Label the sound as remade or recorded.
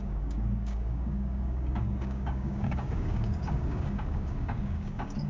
remade